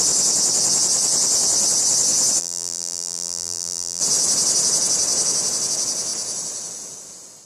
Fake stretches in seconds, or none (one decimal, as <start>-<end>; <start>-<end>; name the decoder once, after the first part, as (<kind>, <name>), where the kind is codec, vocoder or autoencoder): 2.4-4.0 (vocoder, BigVGAN v2)